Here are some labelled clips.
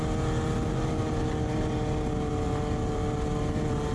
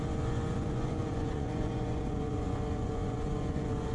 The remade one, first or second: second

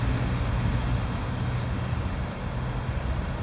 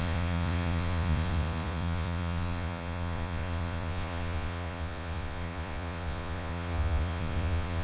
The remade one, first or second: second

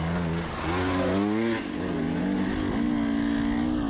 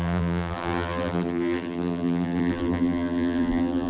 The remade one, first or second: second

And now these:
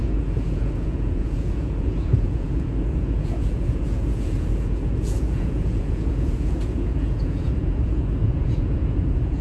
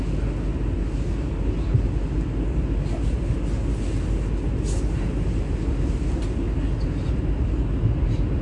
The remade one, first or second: first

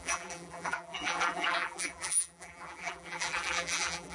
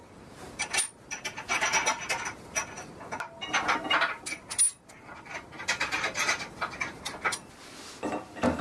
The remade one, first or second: first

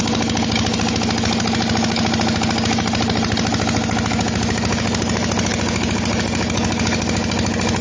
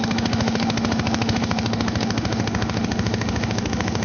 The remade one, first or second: second